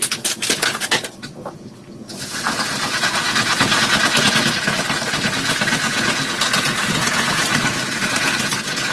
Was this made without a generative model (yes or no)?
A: no